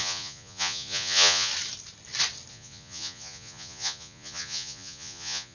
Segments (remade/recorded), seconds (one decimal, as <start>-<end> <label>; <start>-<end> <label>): 0.0-1.5 remade; 1.5-2.5 recorded; 2.5-5.5 remade